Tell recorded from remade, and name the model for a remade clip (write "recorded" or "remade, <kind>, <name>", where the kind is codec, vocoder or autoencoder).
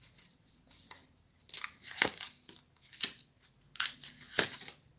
recorded